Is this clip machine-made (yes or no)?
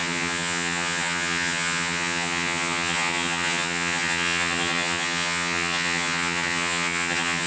yes